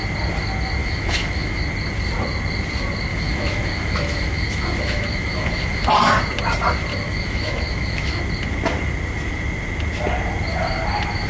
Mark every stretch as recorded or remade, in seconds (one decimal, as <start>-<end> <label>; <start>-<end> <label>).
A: 0.0-0.8 recorded; 0.8-1.6 remade; 1.6-3.1 recorded; 3.1-5.9 remade; 5.9-6.9 recorded; 6.9-8.2 remade; 8.2-11.3 recorded